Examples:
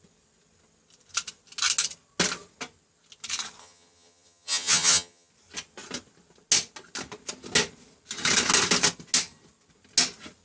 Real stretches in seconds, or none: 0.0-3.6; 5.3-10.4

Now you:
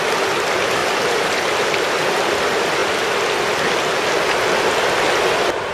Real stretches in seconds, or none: 0.0-5.7

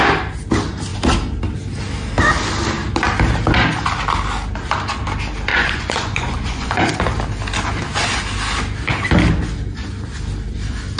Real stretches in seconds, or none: 0.0-5.5; 6.9-11.0